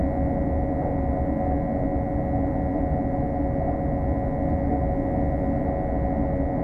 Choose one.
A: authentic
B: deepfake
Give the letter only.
A